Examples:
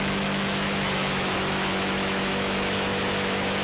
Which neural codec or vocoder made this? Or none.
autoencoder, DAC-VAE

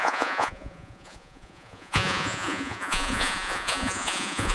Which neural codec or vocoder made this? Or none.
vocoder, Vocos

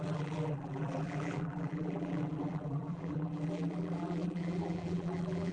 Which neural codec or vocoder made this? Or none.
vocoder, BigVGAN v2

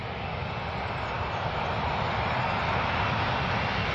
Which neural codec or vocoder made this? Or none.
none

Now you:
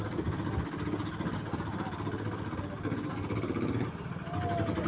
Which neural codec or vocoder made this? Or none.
none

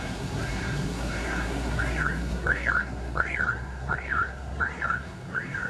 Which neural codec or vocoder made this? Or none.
codec, SNAC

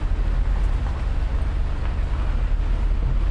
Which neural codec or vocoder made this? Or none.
none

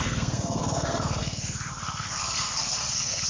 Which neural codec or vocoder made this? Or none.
codec, SNAC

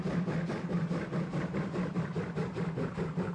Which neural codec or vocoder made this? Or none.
vocoder, BigVGAN v2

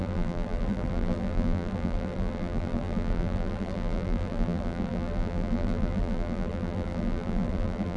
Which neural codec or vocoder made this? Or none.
vocoder, BigVGAN v2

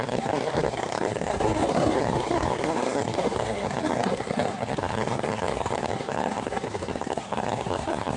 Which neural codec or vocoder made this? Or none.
codec, SNAC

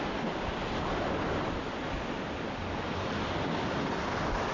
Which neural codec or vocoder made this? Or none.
none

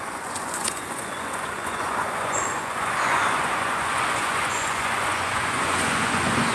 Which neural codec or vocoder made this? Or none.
vocoder, Vocos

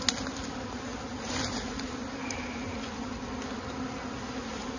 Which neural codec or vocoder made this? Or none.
none